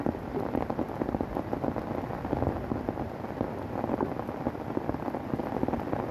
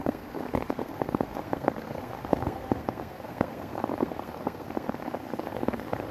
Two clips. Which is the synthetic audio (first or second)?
second